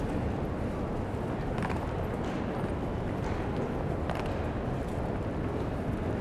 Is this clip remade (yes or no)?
no